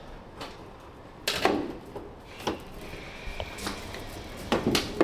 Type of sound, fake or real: real